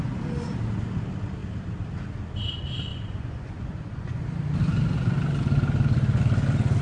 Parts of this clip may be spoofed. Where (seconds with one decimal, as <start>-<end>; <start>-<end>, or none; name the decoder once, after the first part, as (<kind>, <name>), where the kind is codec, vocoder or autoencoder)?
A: 2.9-4.2 (vocoder, Vocos)